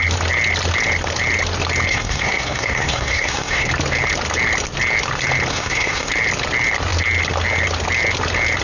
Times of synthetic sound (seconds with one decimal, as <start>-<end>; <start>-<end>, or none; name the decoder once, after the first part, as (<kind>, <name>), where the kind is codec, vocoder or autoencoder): 1.9-3.7 (codec, SNAC); 5.5-6.1